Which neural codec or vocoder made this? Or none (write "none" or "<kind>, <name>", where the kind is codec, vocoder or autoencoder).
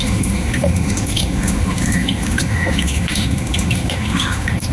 autoencoder, DAC-VAE